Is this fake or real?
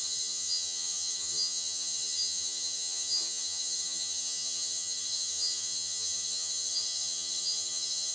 fake